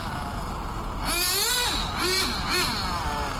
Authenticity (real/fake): real